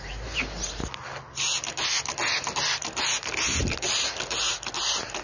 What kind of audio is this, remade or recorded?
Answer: recorded